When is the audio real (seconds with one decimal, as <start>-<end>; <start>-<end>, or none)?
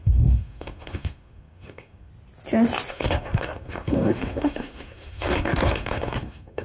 2.1-2.9